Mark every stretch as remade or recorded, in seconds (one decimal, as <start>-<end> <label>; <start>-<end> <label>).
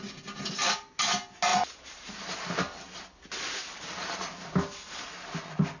0.0-5.8 recorded